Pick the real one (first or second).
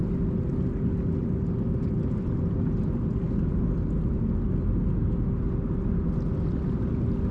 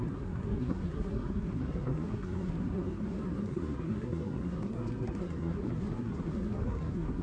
first